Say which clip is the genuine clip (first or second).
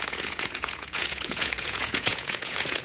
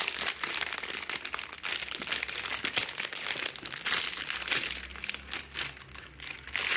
second